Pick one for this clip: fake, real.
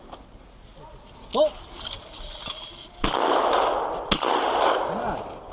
real